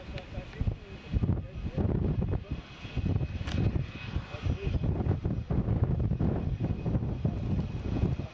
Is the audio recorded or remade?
recorded